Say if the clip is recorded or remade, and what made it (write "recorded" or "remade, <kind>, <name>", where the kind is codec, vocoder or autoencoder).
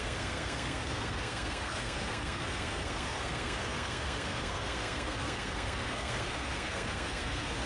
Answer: remade, codec, SNAC